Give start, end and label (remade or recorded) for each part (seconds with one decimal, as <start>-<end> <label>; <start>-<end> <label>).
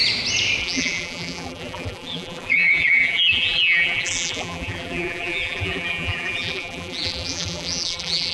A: 0.0-0.6 recorded; 0.6-8.3 remade